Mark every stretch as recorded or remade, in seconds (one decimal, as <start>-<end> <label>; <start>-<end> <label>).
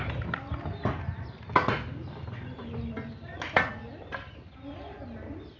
0.0-5.6 recorded